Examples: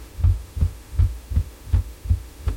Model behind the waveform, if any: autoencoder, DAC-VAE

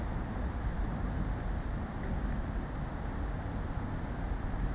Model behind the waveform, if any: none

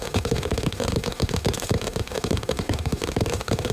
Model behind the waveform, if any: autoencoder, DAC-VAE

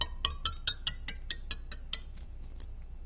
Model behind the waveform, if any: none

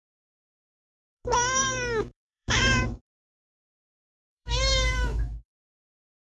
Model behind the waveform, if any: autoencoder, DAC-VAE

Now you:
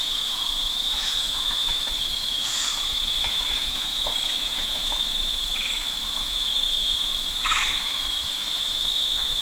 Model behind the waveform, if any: autoencoder, DAC-VAE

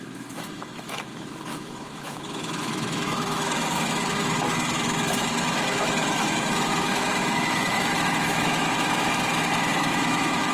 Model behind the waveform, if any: autoencoder, DAC-VAE